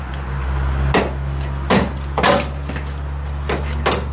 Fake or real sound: real